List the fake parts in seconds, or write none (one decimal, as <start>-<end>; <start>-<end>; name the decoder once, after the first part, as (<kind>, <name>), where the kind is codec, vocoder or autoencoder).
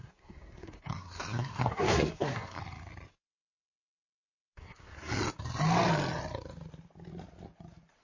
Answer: 0.0-2.6 (codec, SNAC); 4.5-5.1